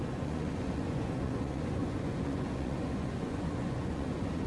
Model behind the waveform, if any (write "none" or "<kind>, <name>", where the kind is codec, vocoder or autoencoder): vocoder, Vocos